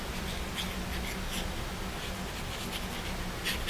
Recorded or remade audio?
recorded